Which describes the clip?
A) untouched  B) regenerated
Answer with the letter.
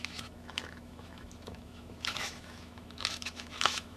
B